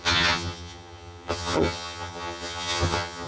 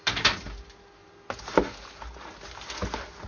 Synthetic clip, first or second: first